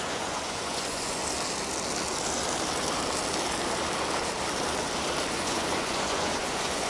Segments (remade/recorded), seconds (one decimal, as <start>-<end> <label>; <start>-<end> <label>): 0.0-1.2 remade; 1.2-5.3 recorded; 5.3-6.9 remade